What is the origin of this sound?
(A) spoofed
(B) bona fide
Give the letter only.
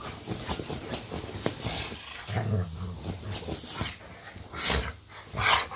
B